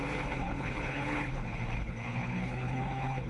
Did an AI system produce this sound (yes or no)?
yes